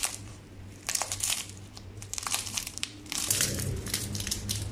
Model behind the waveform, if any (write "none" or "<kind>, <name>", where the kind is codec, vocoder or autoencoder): vocoder, BigVGAN v2